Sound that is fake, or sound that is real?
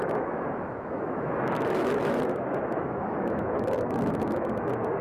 fake